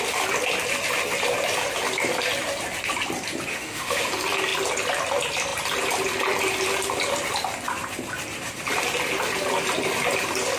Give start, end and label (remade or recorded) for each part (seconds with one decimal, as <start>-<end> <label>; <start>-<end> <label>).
0.0-3.5 recorded; 3.5-4.1 remade; 4.1-10.6 recorded